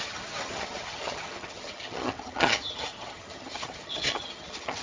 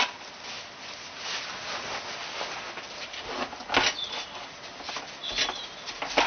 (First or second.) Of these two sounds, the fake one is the first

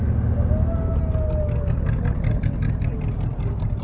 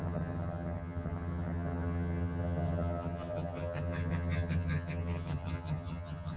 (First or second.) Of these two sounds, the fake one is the second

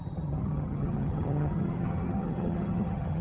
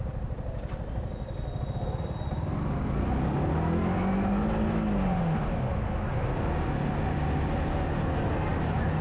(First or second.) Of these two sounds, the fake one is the first